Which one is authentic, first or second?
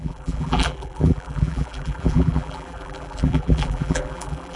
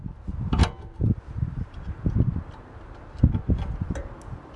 second